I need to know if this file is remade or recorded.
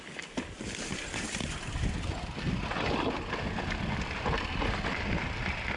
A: recorded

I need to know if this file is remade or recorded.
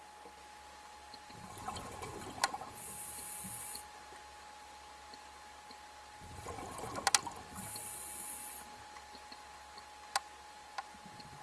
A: recorded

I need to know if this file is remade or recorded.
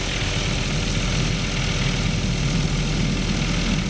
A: recorded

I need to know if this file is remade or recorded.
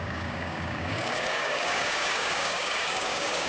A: remade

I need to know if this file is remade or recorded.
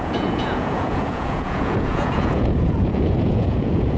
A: remade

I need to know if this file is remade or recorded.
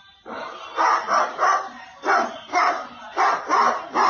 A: recorded